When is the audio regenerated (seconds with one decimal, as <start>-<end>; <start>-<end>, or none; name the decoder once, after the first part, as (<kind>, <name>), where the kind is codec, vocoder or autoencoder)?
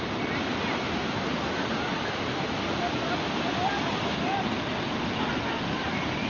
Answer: none